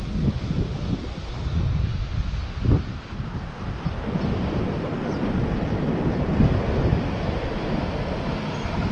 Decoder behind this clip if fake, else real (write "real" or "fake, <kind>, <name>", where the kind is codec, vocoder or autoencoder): real